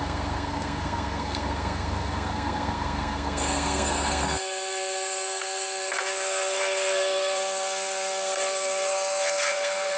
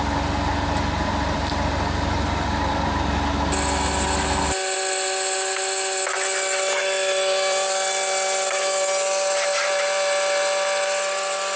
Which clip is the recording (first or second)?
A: second